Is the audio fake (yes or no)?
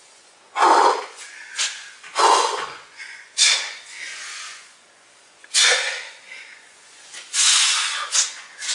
yes